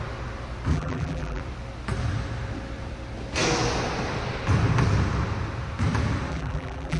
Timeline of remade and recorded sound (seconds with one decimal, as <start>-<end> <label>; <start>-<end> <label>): 0.0-0.7 recorded; 0.7-1.4 remade; 1.4-6.3 recorded; 6.3-7.0 remade